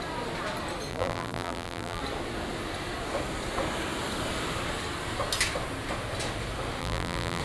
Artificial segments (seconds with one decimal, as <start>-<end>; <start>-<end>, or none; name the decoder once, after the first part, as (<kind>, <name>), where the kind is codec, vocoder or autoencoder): 0.9-2.0 (vocoder, BigVGAN v2); 6.8-7.4